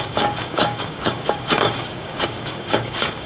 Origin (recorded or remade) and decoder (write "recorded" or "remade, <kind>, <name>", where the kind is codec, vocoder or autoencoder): remade, codec, DAC